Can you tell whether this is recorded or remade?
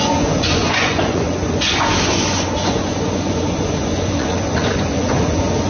remade